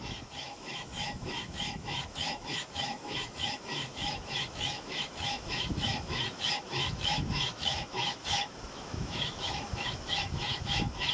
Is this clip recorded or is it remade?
remade